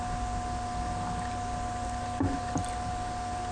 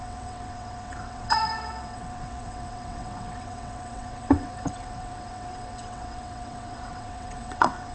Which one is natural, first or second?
first